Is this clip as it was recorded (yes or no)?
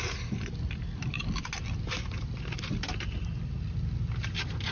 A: yes